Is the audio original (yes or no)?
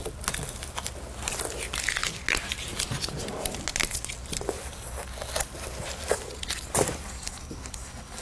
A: yes